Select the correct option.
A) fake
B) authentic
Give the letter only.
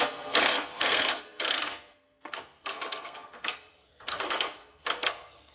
A